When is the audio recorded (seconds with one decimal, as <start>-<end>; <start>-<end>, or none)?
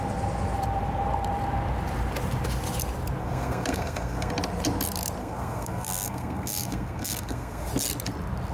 0.0-3.2; 4.3-5.2; 7.7-8.5